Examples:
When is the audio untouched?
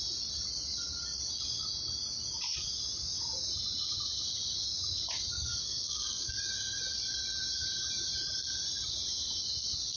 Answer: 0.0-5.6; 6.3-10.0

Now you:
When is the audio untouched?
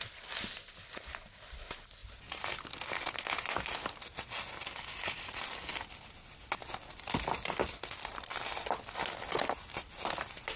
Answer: 0.0-10.6